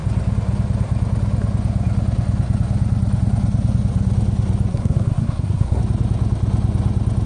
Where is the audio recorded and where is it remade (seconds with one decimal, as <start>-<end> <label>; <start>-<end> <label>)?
0.0-4.7 recorded; 4.7-5.8 remade; 5.8-7.3 recorded